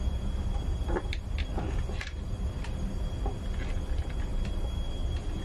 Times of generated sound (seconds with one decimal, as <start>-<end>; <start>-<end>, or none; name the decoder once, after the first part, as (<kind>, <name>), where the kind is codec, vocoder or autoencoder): 0.0-4.3 (vocoder, BigVGAN v2); 4.9-5.4

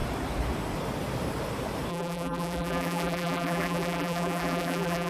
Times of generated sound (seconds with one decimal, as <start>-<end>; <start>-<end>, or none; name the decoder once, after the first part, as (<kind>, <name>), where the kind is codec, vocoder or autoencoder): 1.9-5.1 (vocoder, BigVGAN v2)

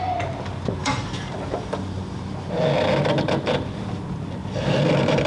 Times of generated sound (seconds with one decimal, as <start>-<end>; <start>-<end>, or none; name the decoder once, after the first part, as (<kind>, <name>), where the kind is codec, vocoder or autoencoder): 0.8-2.2 (vocoder, BigVGAN v2); 4.4-5.3

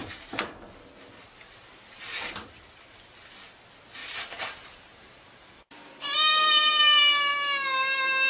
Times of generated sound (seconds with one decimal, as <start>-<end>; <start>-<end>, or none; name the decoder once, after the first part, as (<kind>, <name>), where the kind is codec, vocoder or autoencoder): 0.0-0.7 (vocoder, BigVGAN v2); 4.0-6.7

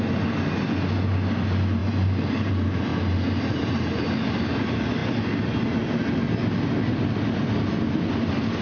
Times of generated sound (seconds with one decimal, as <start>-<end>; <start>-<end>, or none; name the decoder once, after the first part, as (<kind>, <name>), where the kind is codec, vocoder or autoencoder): 1.8-2.5 (vocoder, BigVGAN v2); 2.9-4.4

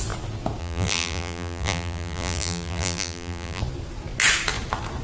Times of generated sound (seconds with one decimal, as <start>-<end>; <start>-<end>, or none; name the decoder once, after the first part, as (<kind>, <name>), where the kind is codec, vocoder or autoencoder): 0.6-3.6 (vocoder, BigVGAN v2)

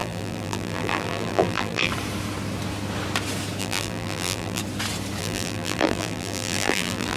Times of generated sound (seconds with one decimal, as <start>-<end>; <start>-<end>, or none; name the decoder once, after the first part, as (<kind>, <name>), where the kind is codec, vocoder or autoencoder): 0.0-1.9 (vocoder, BigVGAN v2); 3.6-4.6; 5.2-7.2